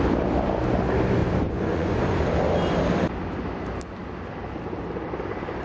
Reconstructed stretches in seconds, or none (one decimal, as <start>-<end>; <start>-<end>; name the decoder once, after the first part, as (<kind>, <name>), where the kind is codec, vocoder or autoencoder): 1.2-2.2 (vocoder, Vocos)